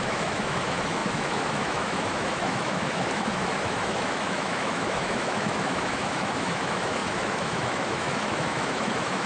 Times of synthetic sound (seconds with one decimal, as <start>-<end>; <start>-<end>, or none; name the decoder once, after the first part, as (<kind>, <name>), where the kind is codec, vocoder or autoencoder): 0.0-9.3 (autoencoder, DAC-VAE)